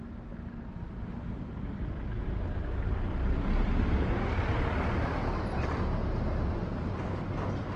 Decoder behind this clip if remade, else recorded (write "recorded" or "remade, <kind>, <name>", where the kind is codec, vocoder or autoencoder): recorded